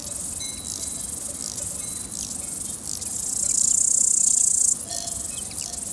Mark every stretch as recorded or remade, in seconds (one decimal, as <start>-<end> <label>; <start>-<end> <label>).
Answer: 0.0-5.9 recorded